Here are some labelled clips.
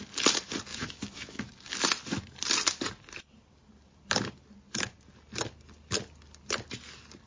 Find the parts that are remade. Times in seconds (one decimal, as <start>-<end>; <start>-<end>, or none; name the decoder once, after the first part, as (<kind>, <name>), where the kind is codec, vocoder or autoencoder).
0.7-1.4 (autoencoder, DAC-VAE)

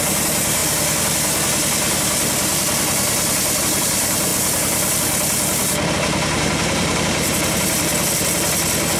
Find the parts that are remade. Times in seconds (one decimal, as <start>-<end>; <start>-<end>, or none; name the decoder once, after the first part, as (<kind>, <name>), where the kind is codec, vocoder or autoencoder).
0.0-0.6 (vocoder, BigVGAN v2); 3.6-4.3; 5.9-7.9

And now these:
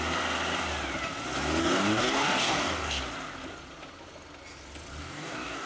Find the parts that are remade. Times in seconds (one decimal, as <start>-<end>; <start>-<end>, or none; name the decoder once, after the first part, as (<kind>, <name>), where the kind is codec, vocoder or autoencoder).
1.6-3.0 (codec, DAC); 5.0-5.7

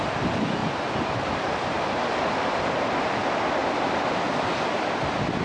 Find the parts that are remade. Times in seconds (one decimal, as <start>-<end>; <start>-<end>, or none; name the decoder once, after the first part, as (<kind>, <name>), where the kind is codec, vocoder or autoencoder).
0.6-3.1 (vocoder, BigVGAN v2)

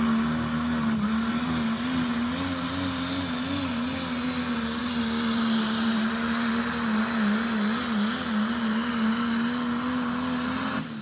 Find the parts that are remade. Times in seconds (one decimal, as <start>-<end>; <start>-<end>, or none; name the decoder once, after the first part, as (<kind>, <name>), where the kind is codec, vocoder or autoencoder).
4.8-6.6 (vocoder, BigVGAN v2)

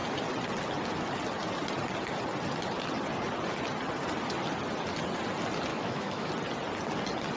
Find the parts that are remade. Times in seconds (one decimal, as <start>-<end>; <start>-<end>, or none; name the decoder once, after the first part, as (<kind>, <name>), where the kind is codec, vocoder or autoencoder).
5.7-6.3 (autoencoder, DAC-VAE)